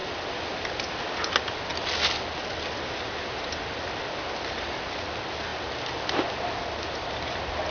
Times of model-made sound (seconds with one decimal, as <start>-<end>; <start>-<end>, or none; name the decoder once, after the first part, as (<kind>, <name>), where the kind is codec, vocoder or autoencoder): none